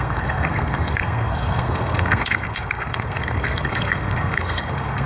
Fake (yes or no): yes